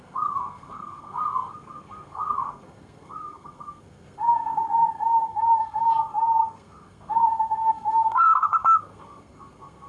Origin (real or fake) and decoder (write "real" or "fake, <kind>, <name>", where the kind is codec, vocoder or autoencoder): fake, codec, SNAC